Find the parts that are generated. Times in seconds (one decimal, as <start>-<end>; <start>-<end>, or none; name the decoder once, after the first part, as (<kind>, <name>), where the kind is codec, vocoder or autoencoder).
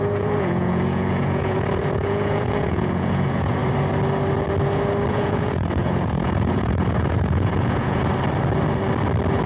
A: 0.0-3.6 (vocoder, Vocos); 5.1-8.0